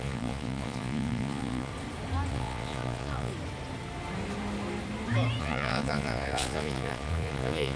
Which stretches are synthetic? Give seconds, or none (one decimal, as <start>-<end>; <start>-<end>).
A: 0.0-1.7; 2.3-3.3; 5.4-7.8